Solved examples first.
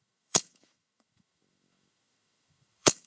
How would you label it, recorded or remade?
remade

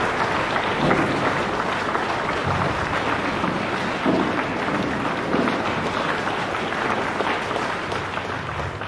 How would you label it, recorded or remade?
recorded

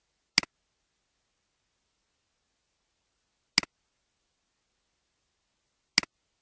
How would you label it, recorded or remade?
recorded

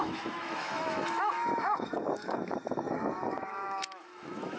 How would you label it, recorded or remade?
remade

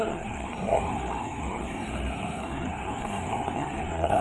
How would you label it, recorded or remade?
remade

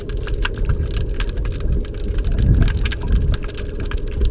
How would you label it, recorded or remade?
recorded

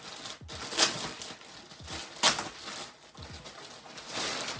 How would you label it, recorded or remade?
recorded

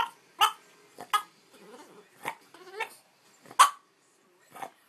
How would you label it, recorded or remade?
recorded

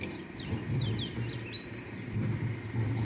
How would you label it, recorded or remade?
recorded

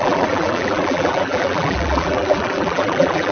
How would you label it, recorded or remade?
remade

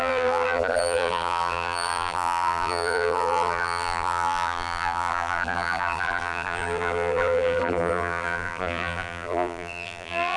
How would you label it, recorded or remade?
remade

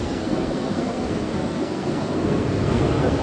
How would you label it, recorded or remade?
remade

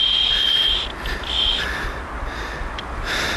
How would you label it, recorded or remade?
recorded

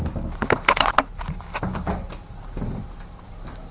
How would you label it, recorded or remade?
recorded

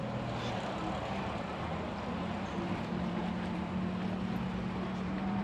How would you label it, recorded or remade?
recorded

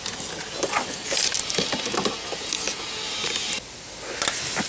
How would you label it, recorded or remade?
recorded